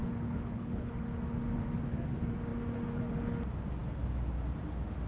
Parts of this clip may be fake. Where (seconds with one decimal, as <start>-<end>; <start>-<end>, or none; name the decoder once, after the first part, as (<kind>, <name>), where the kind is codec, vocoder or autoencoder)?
0.0-1.0 (codec, HILCodec)